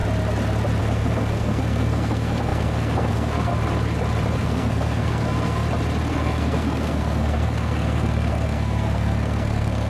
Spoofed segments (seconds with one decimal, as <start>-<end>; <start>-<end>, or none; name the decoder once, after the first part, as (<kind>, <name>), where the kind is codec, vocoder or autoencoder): 0.8-3.5 (codec, SNAC); 4.4-5.6; 6.1-9.9